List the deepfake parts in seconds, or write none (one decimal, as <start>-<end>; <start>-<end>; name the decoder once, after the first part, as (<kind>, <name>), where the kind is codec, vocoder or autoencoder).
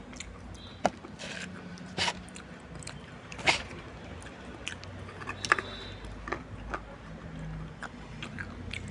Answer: 1.7-4.2 (vocoder, BigVGAN v2)